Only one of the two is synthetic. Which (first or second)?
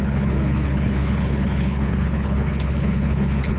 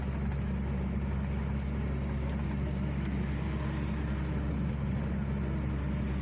first